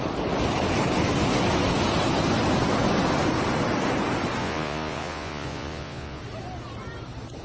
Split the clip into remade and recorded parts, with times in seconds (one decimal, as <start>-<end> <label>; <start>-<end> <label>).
0.0-4.4 recorded; 4.4-6.2 remade; 6.2-7.4 recorded